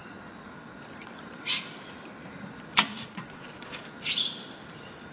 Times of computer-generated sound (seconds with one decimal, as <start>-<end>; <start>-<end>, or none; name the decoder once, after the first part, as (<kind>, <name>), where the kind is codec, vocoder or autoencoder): 2.9-3.8 (vocoder, Vocos)